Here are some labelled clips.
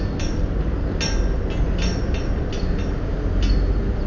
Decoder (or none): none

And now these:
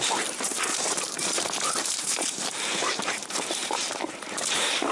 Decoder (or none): vocoder, BigVGAN v2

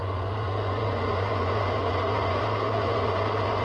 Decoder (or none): vocoder, Vocos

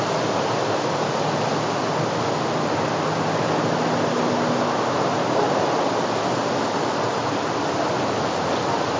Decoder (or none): none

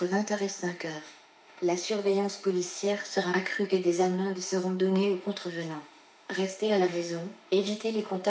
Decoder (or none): autoencoder, DAC-VAE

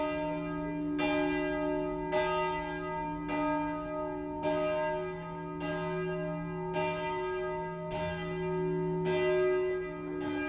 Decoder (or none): none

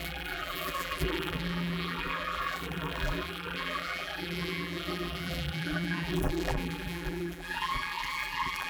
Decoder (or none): vocoder, BigVGAN v2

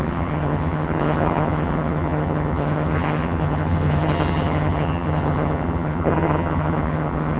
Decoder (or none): vocoder, HiFi-GAN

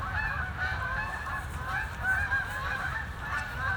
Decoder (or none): vocoder, BigVGAN v2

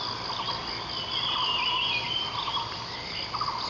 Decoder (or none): none